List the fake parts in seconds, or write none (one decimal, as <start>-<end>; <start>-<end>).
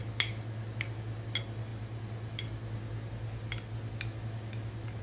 none